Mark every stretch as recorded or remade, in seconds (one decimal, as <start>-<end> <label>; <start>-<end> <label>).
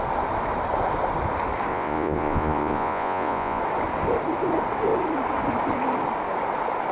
0.0-1.7 recorded; 1.7-3.6 remade; 3.6-6.9 recorded